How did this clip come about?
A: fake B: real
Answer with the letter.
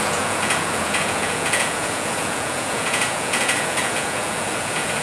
A